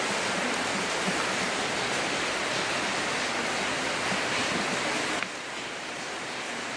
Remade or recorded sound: recorded